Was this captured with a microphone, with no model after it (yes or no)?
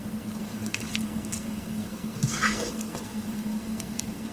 no